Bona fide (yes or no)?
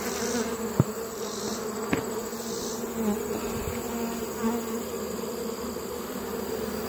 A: yes